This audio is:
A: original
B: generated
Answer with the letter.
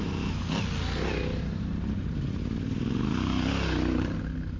A